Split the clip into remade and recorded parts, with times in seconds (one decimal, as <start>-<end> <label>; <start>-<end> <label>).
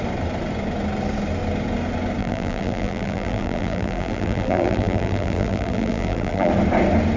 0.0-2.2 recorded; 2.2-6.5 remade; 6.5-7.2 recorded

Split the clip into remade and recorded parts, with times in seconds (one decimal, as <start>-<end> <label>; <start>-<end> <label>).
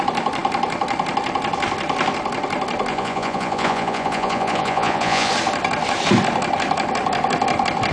0.0-2.9 recorded; 2.9-5.3 remade; 5.3-7.9 recorded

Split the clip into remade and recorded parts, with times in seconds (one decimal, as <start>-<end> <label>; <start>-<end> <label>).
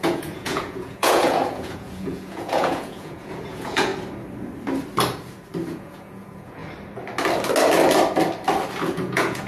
0.0-3.9 remade; 3.9-5.7 recorded; 5.7-6.6 remade; 6.6-8.9 recorded; 8.9-9.5 remade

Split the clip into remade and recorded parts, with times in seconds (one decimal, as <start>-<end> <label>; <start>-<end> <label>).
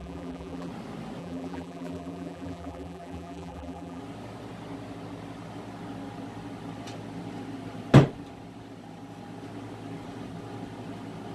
0.0-0.7 remade; 0.7-1.2 recorded; 1.2-4.0 remade; 4.0-11.3 recorded